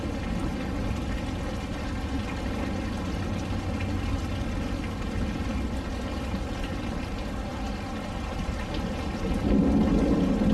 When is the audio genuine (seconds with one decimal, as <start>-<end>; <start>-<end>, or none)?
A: 0.0-10.5